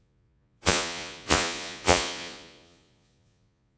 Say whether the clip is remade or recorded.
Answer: remade